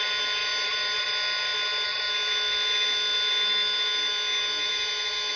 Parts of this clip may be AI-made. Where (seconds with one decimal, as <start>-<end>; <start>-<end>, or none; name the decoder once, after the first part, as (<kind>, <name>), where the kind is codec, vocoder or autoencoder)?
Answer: 0.4-1.0 (vocoder, BigVGAN v2)